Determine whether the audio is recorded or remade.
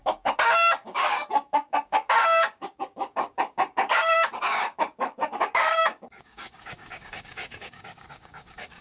remade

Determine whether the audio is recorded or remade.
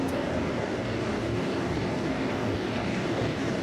remade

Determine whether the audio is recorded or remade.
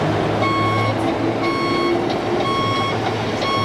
recorded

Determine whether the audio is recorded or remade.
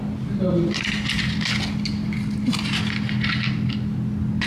recorded